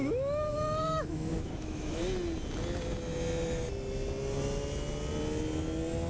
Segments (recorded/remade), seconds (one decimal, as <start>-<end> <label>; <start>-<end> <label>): 0.0-2.0 remade; 2.0-6.1 recorded